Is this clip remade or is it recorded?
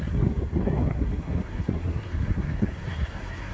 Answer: remade